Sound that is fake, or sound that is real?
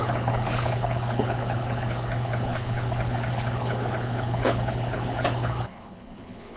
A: fake